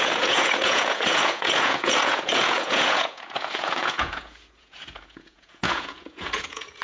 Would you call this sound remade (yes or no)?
yes